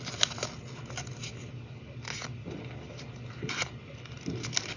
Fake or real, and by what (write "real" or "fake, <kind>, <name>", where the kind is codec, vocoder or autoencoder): real